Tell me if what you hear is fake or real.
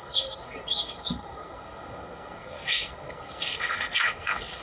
fake